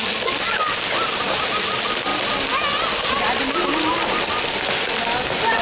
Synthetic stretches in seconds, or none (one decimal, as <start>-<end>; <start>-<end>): none

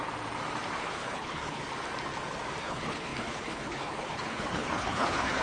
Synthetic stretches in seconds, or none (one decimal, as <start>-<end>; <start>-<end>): 0.8-1.6; 2.6-5.4

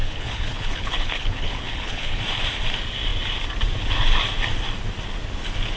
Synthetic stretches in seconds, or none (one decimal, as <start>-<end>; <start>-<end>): 0.0-2.2

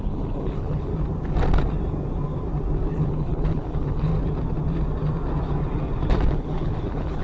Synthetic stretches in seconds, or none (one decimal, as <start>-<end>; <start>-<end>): 0.0-0.9; 2.9-4.1; 6.3-7.2